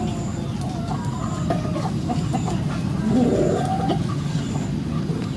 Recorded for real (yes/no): yes